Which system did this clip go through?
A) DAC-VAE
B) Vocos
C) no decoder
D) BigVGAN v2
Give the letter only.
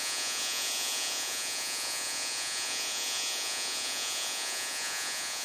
B